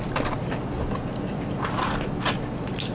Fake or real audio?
real